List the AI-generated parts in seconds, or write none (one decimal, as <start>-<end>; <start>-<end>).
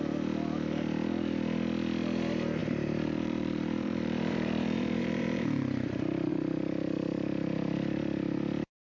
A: 2.6-6.3